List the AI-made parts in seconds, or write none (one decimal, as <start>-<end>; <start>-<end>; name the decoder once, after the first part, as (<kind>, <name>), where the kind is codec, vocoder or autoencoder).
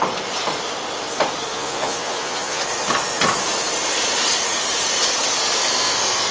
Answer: 1.5-2.6 (vocoder, Vocos)